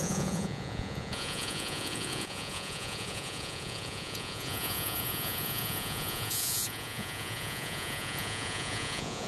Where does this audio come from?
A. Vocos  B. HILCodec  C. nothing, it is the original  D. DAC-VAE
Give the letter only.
A